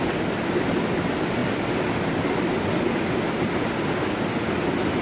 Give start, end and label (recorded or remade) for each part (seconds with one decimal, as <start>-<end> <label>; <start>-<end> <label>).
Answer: 0.0-5.0 recorded